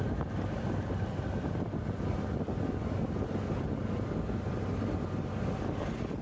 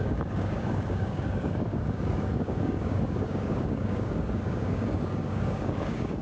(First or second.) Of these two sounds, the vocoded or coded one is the second